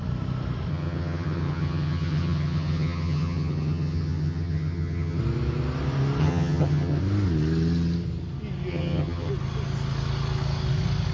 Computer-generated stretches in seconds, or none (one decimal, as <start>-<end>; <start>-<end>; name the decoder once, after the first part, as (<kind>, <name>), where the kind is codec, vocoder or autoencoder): 0.7-5.2 (vocoder, HiFi-GAN); 6.2-7.0; 8.7-9.3